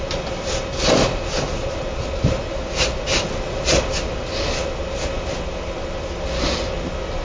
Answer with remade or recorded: recorded